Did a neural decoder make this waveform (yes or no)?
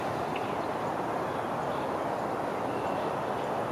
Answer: no